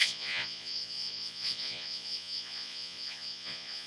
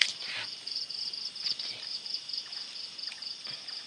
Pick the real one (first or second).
second